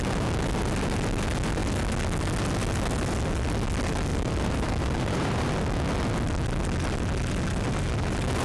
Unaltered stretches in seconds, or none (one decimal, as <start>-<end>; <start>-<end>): 0.0-4.1; 5.5-8.4